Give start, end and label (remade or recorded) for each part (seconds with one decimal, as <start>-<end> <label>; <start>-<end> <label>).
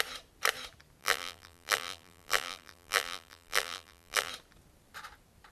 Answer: 0.0-1.0 recorded; 1.0-4.3 remade; 4.3-5.5 recorded